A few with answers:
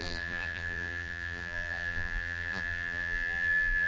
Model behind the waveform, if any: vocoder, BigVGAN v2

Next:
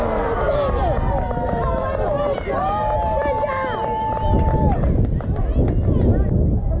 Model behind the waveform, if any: none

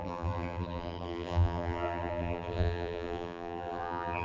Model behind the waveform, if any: vocoder, BigVGAN v2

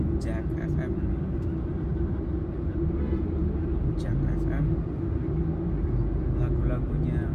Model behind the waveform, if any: none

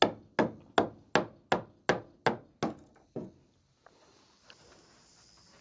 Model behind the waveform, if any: none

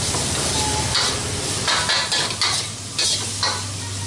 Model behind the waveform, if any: none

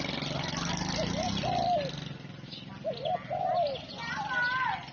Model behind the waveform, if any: none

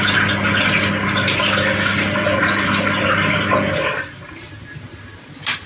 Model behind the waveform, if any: none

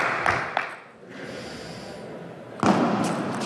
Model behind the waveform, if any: none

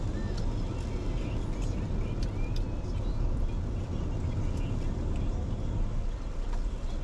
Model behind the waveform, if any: none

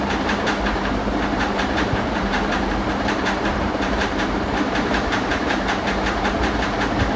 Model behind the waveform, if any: vocoder, BigVGAN v2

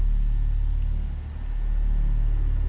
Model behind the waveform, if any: none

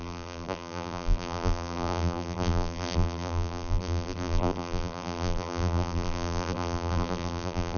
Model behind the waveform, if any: vocoder, BigVGAN v2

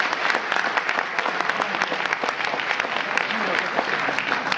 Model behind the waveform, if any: none